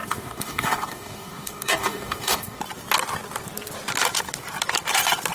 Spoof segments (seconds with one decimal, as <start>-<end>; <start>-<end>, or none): 0.0-2.6